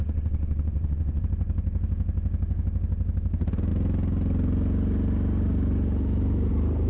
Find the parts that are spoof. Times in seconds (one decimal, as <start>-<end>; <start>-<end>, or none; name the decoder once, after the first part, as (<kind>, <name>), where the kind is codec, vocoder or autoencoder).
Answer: 0.0-1.2 (vocoder, WaveNeXt)